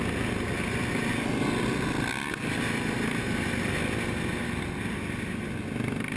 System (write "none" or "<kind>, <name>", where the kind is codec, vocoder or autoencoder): none